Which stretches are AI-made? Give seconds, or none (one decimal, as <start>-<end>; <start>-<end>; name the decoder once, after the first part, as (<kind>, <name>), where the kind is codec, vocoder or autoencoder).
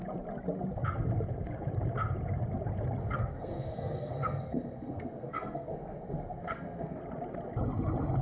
3.0-7.0 (codec, SNAC)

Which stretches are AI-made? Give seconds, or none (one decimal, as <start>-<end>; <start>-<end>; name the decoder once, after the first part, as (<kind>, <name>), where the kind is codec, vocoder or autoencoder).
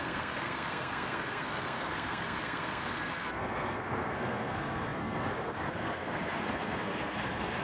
0.0-7.6 (codec, SNAC)